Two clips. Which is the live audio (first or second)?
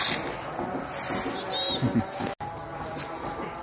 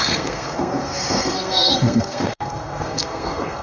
first